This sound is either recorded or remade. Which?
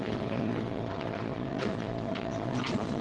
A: remade